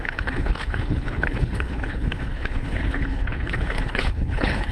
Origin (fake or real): fake